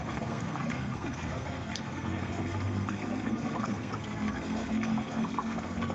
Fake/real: fake